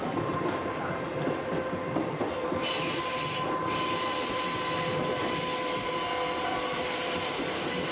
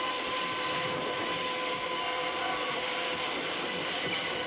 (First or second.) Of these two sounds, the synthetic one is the second